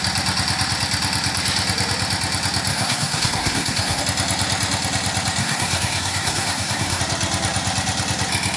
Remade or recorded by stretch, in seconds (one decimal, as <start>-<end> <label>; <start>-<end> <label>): 0.0-2.7 recorded; 2.7-4.0 remade; 4.0-5.4 recorded; 5.4-7.0 remade; 7.0-8.6 recorded